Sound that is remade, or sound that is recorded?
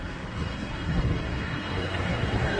remade